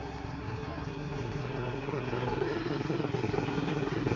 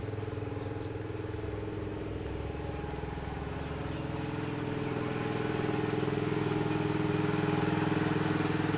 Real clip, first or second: second